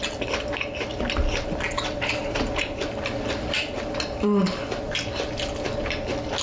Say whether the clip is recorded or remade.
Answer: recorded